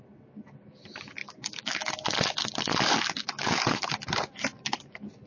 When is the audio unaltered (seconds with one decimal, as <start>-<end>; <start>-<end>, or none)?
0.0-1.2; 1.9-3.2; 3.9-5.3